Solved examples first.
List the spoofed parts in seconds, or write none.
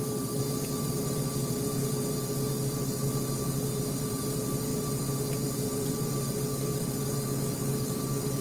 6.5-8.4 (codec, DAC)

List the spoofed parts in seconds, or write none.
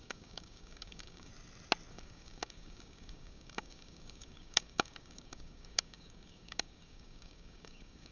0.0-1.3 (codec, DAC); 1.9-8.1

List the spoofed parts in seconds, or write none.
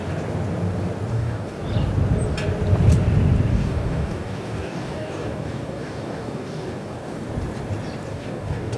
1.1-1.6 (codec, DAC); 3.5-7.3; 8.1-8.8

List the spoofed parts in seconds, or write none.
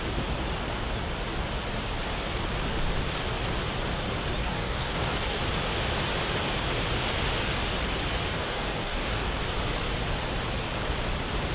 4.4-5.4 (codec, DAC); 8.4-9.4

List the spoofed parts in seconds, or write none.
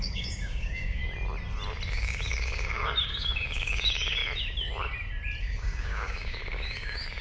0.0-1.0 (codec, DAC); 1.9-4.2; 5.4-7.2